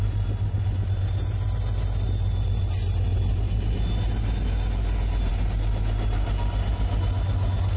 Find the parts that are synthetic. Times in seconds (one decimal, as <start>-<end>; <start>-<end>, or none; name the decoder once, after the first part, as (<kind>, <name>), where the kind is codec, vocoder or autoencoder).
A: none